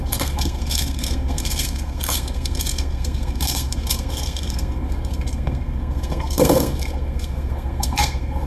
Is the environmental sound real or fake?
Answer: fake